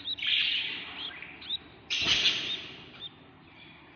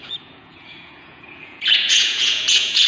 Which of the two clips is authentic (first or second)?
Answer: first